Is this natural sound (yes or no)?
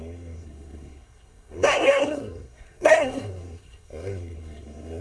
no